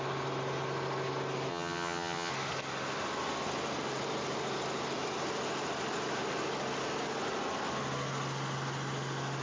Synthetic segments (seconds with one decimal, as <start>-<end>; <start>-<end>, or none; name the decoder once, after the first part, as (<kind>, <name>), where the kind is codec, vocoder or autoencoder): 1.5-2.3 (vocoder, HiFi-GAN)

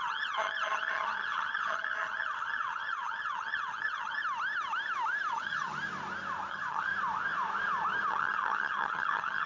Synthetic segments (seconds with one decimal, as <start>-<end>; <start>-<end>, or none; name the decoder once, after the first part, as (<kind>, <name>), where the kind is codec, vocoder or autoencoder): 0.0-4.2 (vocoder, HiFi-GAN); 5.3-5.7; 6.5-6.9; 8.1-9.5

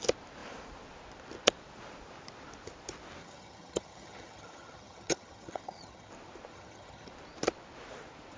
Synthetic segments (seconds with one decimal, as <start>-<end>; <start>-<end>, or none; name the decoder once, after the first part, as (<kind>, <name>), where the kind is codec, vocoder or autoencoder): 3.2-6.1 (vocoder, HiFi-GAN); 6.5-7.1

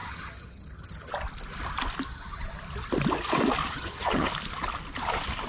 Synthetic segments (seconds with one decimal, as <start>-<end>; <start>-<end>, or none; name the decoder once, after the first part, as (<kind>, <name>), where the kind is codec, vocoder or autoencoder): 0.0-1.1 (vocoder, HiFi-GAN); 3.6-4.3